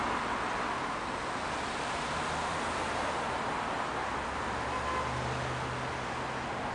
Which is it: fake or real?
real